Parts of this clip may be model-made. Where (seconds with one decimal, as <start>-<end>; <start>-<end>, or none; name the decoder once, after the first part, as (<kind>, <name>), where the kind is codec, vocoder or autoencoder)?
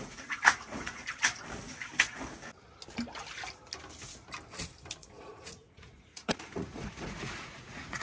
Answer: 0.0-1.0 (vocoder, Vocos); 5.0-8.0